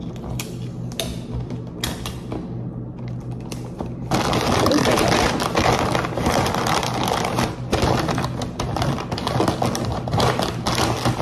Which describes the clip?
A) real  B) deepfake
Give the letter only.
A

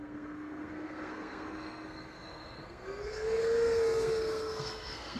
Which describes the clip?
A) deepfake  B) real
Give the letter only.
A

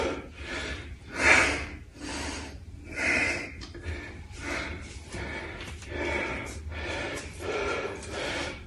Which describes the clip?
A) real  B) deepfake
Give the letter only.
A